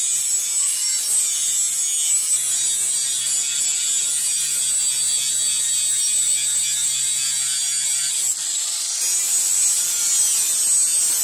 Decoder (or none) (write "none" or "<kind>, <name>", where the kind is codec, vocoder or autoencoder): none